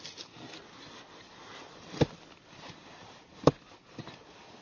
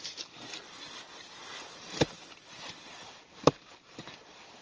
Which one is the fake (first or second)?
second